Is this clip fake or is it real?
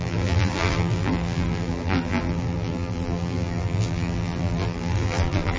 fake